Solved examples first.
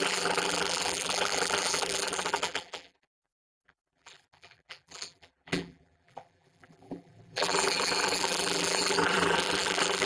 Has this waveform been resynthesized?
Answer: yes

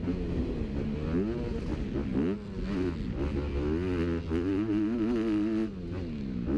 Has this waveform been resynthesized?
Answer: no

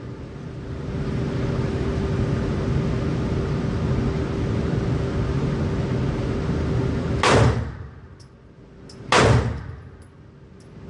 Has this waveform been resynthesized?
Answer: no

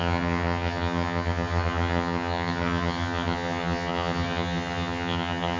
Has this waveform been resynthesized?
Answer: yes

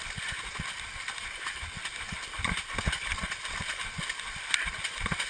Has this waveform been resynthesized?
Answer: no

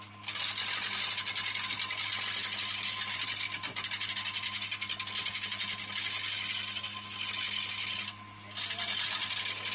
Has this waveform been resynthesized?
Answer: no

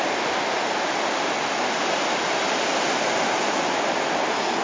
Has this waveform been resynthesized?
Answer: no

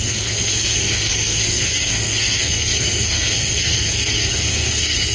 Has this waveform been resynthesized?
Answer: yes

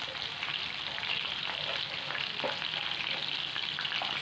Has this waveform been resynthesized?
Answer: no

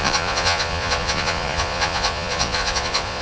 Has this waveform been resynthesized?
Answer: yes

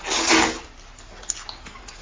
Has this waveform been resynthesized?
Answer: no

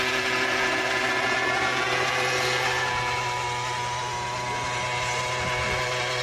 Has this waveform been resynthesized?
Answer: no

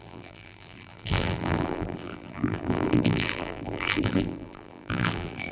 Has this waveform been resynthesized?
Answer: yes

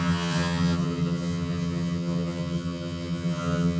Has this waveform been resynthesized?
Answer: yes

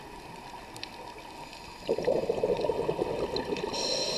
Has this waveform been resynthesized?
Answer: no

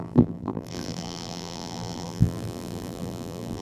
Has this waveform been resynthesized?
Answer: yes